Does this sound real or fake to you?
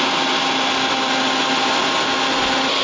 real